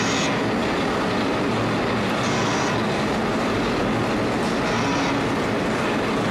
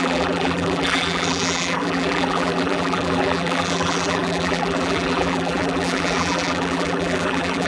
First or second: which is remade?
second